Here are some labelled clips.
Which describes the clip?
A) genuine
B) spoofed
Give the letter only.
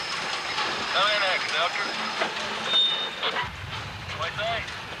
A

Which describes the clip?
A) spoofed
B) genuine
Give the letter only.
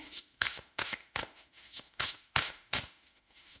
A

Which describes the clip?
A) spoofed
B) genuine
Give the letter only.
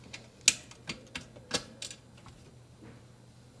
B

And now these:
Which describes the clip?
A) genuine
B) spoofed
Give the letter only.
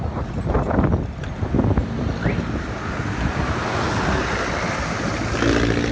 A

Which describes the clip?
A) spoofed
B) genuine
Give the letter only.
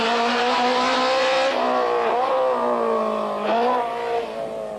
B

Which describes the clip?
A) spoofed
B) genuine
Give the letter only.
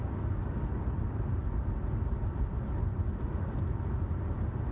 B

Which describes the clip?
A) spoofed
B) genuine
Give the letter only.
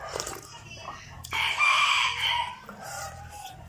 A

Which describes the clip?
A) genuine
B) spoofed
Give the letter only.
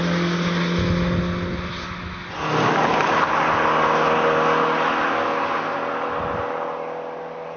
A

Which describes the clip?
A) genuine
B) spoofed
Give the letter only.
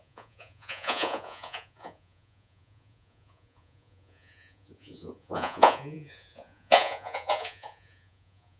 B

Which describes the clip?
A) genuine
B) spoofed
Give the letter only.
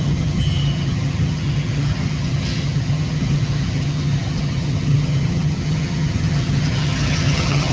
B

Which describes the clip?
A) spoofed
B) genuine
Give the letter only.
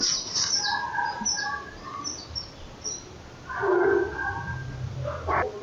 B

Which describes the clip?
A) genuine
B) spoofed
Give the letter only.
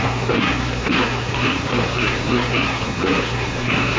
B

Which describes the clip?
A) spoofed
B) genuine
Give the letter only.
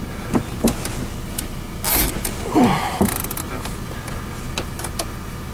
B